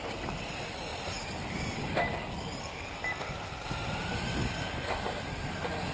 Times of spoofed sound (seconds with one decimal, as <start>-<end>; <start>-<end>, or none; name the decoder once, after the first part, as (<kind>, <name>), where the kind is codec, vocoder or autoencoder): none